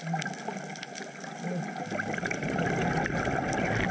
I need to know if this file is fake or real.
real